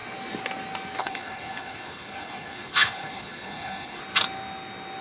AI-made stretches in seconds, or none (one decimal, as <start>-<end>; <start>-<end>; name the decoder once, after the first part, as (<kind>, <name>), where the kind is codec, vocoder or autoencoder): 1.0-4.0 (codec, HILCodec)